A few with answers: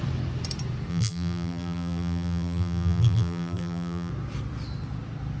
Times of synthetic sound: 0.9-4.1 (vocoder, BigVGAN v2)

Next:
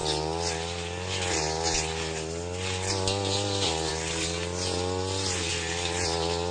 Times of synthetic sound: none

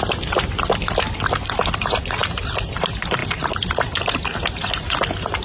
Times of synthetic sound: 0.0-2.2 (vocoder, BigVGAN v2); 2.7-5.4

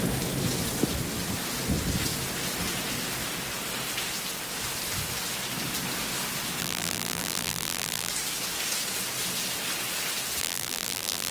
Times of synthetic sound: 6.6-8.1 (vocoder, BigVGAN v2); 10.4-11.3

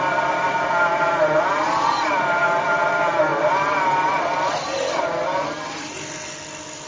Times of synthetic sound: 3.3-5.0 (vocoder, BigVGAN v2)

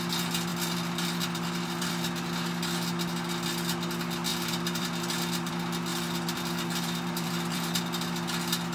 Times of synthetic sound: 0.5-1.9 (vocoder, BigVGAN v2); 4.3-5.5; 5.9-7.8

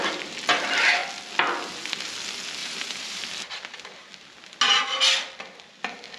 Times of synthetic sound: 2.6-3.2 (vocoder, BigVGAN v2)